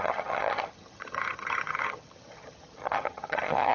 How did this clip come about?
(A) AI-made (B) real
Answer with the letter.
A